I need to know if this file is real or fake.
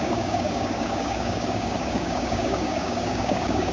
fake